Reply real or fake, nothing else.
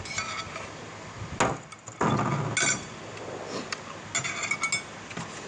real